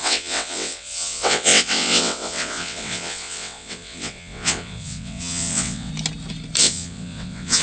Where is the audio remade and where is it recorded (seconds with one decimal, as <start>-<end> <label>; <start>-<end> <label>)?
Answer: 0.0-5.9 remade; 5.9-6.6 recorded; 6.6-7.6 remade